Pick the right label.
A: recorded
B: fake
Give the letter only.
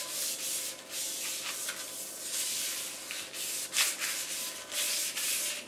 A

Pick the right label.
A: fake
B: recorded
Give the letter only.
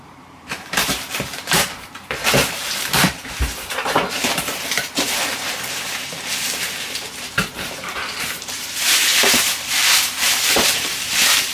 A